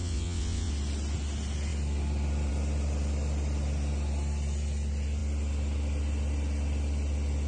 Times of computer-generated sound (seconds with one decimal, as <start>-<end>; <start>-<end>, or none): 0.0-0.7